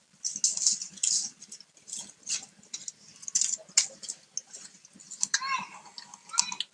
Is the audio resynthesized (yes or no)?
no